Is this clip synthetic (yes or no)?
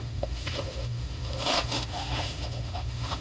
yes